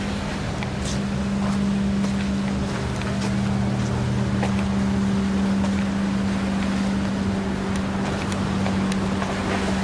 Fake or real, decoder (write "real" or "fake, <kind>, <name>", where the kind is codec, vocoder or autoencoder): real